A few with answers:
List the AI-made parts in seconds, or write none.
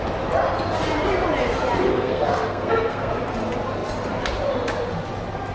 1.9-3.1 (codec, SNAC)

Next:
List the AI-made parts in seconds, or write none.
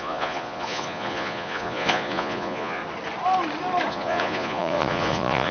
0.0-2.8 (vocoder, Vocos); 3.9-5.5